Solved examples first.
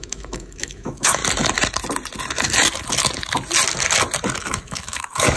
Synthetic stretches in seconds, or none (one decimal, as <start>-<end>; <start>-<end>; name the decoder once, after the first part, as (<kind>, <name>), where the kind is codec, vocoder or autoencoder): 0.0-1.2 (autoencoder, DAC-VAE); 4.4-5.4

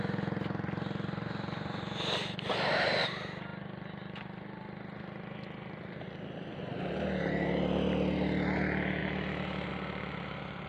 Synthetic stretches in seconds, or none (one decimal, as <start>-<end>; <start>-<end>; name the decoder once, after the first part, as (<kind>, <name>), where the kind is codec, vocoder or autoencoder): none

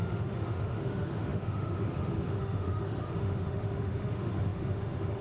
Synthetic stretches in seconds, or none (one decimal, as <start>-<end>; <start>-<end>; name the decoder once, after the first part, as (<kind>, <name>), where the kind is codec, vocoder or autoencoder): 0.0-5.2 (autoencoder, DAC-VAE)

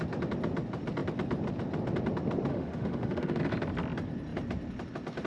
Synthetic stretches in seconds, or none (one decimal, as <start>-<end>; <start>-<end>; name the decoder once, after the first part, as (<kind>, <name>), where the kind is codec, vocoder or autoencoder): 2.5-3.4 (autoencoder, DAC-VAE)

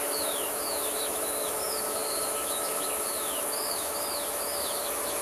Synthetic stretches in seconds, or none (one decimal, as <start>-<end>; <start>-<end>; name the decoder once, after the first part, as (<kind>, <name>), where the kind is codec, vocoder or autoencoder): 0.0-5.2 (autoencoder, DAC-VAE)

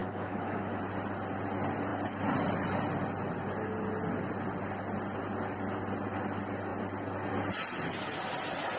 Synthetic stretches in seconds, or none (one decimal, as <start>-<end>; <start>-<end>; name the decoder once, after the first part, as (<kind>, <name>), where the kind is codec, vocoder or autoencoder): 0.0-0.8 (autoencoder, DAC-VAE)